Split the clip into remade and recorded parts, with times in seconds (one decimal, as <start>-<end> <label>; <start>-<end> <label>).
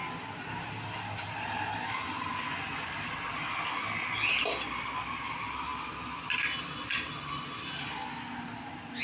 0.0-9.0 recorded